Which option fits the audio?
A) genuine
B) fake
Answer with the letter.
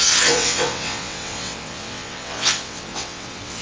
B